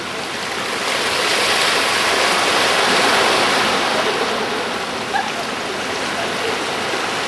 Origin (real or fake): real